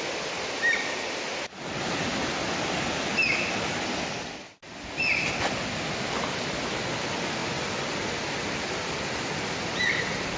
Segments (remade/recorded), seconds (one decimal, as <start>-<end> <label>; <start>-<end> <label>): 0.0-10.4 recorded